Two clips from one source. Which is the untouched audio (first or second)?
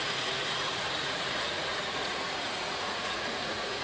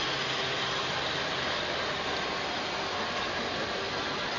second